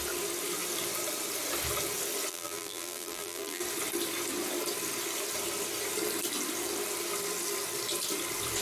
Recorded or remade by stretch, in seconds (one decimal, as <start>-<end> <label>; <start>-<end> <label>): 0.0-2.3 recorded; 2.3-3.6 remade; 3.6-8.6 recorded